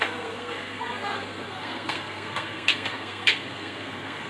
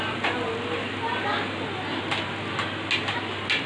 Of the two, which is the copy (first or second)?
first